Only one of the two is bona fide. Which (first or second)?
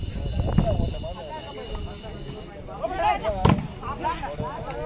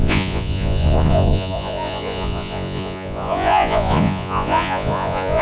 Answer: first